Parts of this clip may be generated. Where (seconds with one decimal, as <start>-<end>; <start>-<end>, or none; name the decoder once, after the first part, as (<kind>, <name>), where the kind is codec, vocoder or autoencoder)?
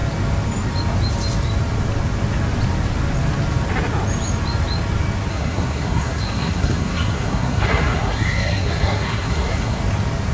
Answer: 5.3-9.8 (codec, SNAC)